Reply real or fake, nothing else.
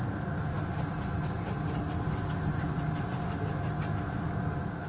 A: real